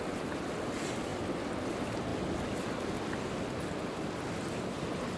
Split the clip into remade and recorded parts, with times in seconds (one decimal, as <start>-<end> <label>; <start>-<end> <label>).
0.0-1.1 recorded; 1.1-1.7 remade; 1.7-2.1 recorded; 2.1-4.7 remade; 4.7-5.2 recorded